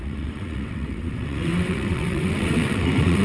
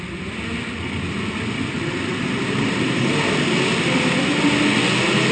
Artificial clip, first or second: first